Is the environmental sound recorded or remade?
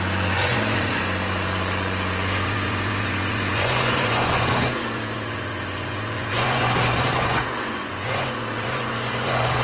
remade